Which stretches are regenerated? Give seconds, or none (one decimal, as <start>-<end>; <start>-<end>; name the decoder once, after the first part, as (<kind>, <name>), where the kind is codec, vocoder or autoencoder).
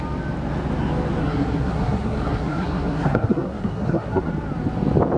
1.2-4.3 (codec, SNAC)